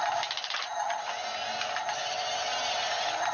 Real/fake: real